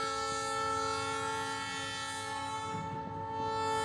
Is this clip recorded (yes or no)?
yes